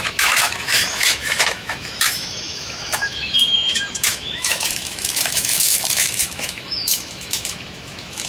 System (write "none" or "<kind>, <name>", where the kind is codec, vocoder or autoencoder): autoencoder, DAC-VAE